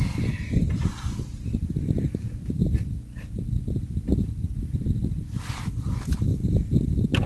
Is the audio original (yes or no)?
yes